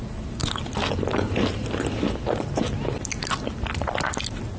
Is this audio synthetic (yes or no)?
no